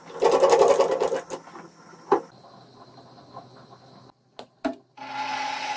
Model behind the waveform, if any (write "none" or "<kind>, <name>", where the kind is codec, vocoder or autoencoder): none